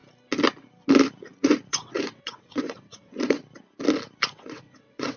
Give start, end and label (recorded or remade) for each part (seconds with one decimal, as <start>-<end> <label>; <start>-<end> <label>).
0.0-1.7 recorded; 1.7-3.4 remade; 3.4-4.3 recorded; 4.3-5.2 remade